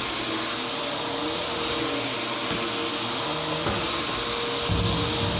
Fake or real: real